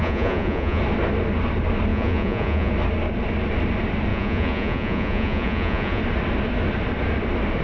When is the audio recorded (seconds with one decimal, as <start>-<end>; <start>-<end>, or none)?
0.8-1.9; 2.7-4.1; 6.0-7.6